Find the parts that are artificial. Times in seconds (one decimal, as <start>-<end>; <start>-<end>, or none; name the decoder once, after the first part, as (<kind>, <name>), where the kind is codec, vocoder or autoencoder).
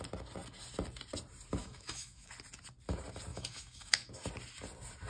1.6-2.3 (autoencoder, DAC-VAE); 3.3-4.1